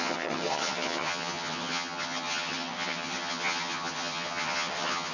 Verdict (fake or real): fake